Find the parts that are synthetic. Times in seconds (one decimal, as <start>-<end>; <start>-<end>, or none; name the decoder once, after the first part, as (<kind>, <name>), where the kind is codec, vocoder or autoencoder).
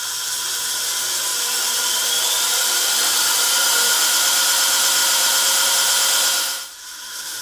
5.0-5.7 (vocoder, BigVGAN v2)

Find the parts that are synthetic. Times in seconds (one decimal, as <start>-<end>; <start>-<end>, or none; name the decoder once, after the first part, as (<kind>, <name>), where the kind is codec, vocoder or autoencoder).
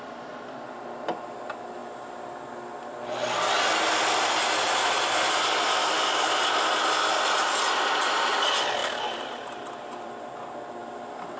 8.8-10.3 (vocoder, BigVGAN v2); 10.8-11.4